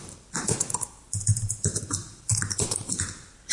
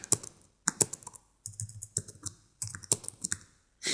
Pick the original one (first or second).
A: second